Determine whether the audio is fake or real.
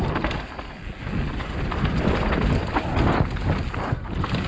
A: real